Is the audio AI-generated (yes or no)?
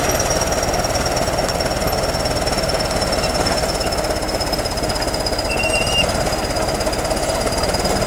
no